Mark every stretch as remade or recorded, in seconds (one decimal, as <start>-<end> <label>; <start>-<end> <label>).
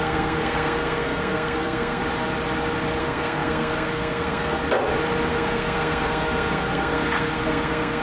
0.0-2.0 remade; 2.0-3.0 recorded; 3.0-4.6 remade; 4.6-5.3 recorded; 5.3-8.0 remade